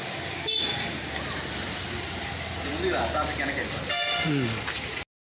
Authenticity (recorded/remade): recorded